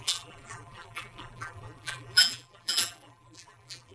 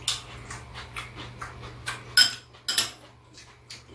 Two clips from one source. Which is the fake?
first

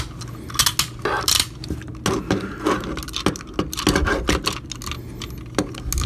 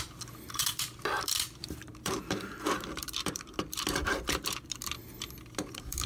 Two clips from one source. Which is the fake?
second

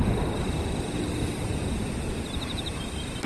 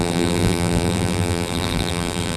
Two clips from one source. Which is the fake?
second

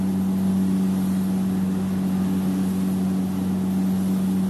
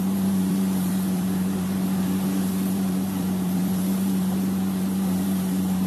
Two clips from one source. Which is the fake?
second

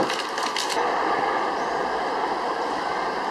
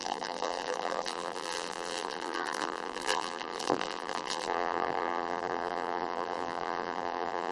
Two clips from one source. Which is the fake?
second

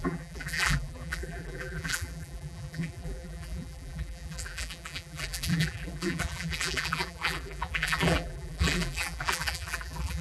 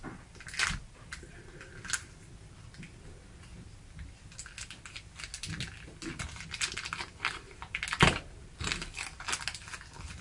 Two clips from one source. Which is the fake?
first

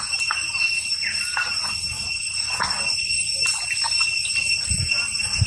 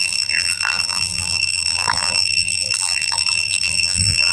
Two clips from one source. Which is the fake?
second